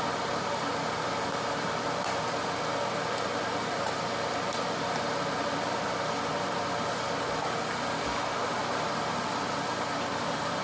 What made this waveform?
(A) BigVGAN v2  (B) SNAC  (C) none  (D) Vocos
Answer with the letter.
C